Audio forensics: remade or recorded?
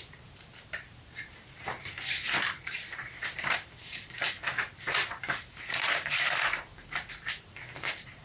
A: remade